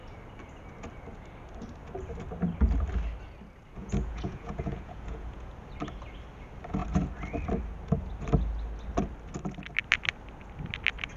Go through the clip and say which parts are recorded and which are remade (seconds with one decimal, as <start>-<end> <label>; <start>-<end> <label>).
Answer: 0.0-3.8 recorded; 3.8-5.5 remade; 5.5-11.2 recorded